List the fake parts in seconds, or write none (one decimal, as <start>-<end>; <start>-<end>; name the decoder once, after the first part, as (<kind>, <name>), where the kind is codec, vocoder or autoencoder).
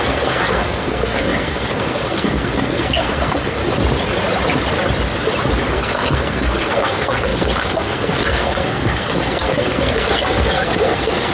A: 0.0-3.6 (codec, SNAC); 5.7-11.3